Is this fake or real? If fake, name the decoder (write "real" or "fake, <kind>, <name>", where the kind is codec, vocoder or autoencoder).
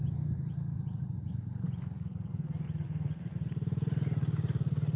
real